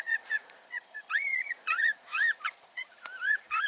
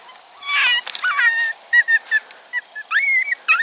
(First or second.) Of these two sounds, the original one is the second